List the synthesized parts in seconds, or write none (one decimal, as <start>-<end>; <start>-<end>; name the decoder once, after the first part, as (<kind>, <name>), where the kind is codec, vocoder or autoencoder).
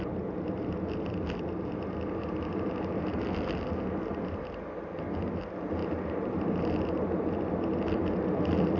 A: 5.8-7.4 (vocoder, BigVGAN v2)